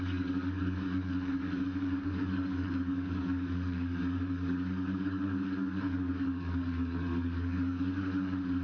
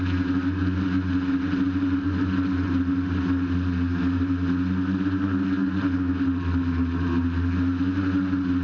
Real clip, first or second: second